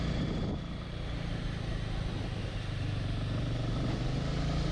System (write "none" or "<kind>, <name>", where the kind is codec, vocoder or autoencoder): none